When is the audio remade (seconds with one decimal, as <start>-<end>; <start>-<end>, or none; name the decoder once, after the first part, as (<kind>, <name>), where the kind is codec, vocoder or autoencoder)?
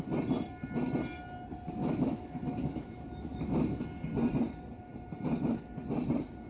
1.8-3.8 (autoencoder, DAC-VAE)